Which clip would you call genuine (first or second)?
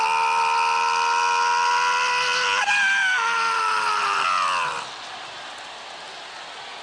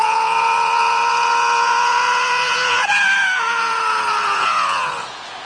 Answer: first